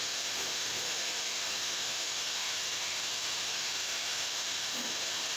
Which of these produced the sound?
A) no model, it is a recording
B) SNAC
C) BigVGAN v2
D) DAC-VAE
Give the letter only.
D